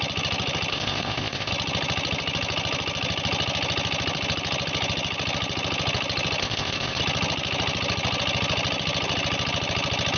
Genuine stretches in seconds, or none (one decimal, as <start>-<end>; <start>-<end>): 0.0-0.7; 1.5-6.4; 7.0-10.2